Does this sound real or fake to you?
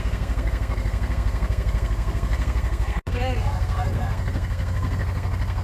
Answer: fake